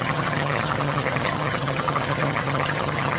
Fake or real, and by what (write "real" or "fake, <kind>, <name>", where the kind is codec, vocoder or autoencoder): fake, vocoder, HiFi-GAN